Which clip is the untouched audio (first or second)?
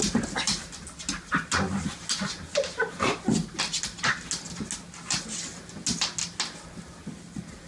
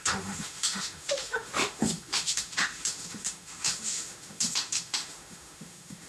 first